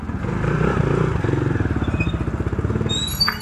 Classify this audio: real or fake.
real